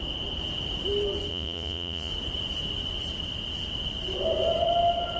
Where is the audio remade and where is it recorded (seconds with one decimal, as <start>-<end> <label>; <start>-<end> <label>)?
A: 0.0-1.3 recorded; 1.3-2.1 remade; 2.1-5.2 recorded